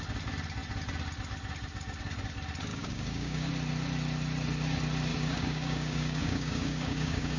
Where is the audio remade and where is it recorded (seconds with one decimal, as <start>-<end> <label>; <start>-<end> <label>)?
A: 0.0-2.7 recorded; 2.7-3.5 remade; 3.5-5.1 recorded; 5.1-7.4 remade